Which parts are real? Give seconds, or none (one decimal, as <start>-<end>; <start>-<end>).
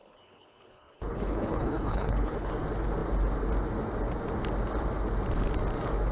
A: 2.5-6.1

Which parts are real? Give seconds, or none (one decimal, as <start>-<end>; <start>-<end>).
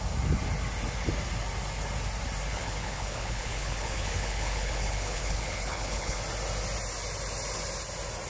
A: 0.0-2.5; 6.2-8.3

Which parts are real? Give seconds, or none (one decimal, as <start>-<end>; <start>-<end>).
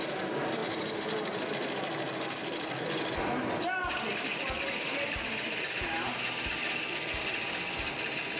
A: 0.0-8.4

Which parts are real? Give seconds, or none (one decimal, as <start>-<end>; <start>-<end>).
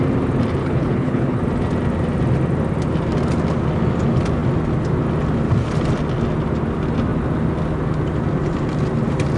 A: 0.0-0.6; 1.4-9.4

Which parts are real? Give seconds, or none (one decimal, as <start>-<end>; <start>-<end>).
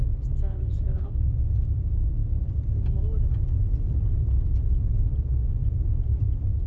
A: 0.0-0.5; 1.2-6.7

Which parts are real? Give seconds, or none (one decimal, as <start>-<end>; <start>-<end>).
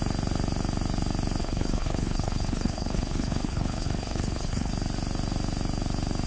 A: 0.0-1.4; 4.7-6.3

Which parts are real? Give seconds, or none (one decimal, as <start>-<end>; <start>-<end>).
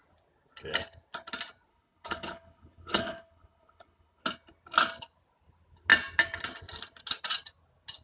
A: 0.0-1.7; 4.2-8.0